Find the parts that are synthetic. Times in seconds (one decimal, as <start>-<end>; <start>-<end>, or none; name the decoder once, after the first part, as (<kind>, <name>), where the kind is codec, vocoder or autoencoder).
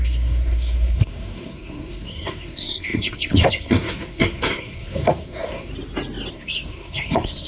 0.0-5.7 (codec, SNAC); 6.3-7.5